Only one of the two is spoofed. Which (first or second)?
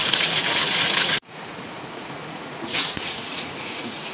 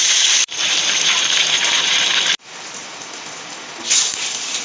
first